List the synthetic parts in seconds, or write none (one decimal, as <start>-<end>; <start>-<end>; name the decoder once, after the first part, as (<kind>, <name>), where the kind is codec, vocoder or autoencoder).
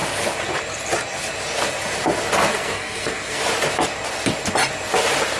2.5-3.4 (codec, SNAC)